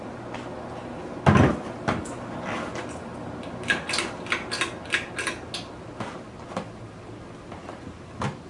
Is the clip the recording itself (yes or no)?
yes